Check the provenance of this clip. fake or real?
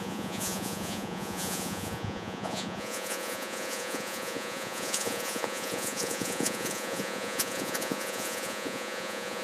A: fake